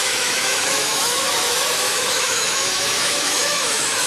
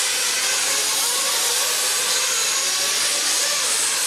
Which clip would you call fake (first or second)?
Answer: first